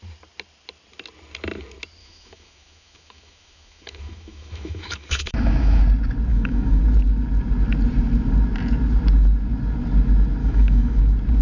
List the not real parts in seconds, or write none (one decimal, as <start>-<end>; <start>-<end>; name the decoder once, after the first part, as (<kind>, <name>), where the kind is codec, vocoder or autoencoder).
2.0-5.8 (autoencoder, DAC-VAE); 6.3-6.8; 10.4-11.0